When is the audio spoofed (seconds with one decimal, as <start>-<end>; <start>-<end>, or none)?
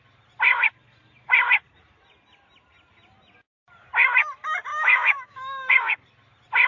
4.7-5.7